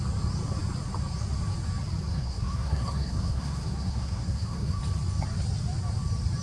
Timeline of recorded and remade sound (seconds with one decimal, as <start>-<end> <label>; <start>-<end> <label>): 0.0-2.1 recorded; 2.1-4.8 remade; 4.8-6.4 recorded